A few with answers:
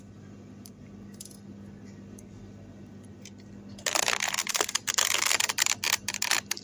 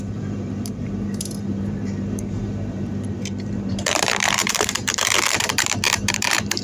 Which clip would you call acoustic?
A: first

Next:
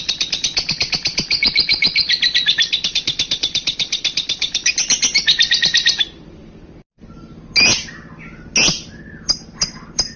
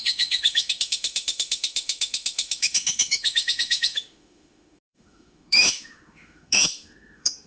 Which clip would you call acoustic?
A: first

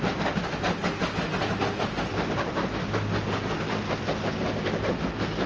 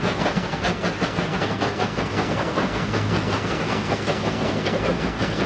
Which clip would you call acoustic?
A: first